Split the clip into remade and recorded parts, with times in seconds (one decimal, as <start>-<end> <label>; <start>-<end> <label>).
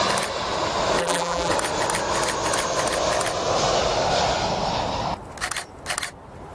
0.0-1.0 recorded; 1.0-1.5 remade; 1.5-6.5 recorded